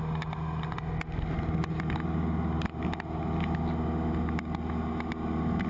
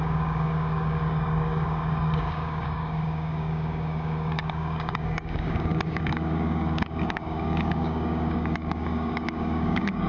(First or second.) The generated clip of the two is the second